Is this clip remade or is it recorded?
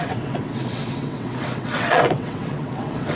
remade